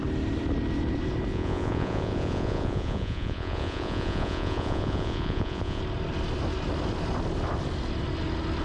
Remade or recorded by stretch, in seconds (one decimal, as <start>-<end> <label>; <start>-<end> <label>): 0.0-1.3 recorded; 1.3-5.8 remade; 5.8-8.6 recorded